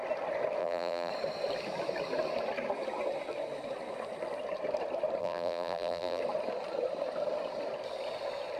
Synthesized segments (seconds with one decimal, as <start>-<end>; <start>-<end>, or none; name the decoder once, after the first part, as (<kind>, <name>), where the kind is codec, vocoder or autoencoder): 0.6-1.1 (vocoder, BigVGAN v2); 5.2-6.2